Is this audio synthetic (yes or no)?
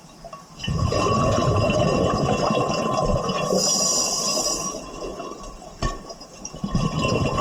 yes